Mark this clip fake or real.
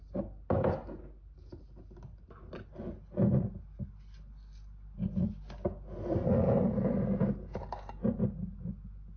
real